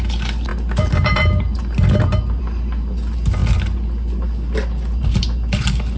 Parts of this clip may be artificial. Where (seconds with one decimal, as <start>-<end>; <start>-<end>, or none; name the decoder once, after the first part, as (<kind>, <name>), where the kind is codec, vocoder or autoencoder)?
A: none